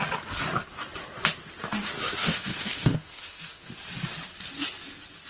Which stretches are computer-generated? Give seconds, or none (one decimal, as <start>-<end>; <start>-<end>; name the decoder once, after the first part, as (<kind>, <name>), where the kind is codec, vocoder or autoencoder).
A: 2.2-3.7 (autoencoder, DAC-VAE)